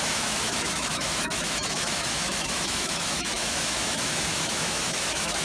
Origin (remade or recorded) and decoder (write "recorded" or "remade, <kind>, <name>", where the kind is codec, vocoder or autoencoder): remade, autoencoder, DAC-VAE